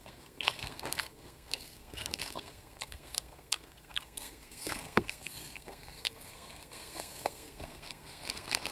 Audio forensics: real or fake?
fake